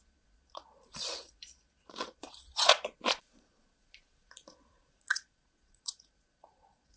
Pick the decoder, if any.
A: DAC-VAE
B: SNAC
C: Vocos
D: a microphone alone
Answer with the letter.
C